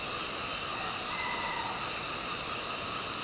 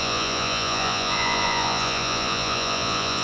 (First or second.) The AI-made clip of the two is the second